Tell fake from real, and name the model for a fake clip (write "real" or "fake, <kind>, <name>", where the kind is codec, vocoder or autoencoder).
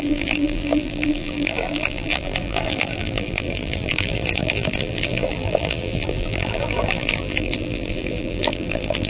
fake, vocoder, BigVGAN v2